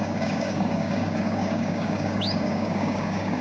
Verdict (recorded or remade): remade